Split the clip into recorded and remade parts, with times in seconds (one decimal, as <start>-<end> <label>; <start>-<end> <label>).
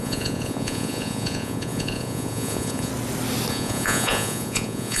0.0-2.9 remade; 2.9-3.5 recorded; 3.5-5.0 remade